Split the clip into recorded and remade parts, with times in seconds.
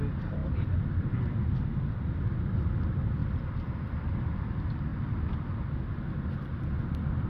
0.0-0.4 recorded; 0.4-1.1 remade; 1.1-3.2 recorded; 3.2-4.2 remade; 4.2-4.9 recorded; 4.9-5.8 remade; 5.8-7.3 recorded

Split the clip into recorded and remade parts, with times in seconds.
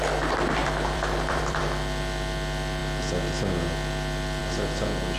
0.0-0.6 recorded; 0.6-1.6 remade; 1.6-5.2 recorded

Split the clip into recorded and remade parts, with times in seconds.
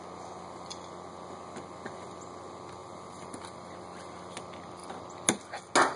0.0-2.8 recorded; 2.8-3.4 remade; 3.4-6.0 recorded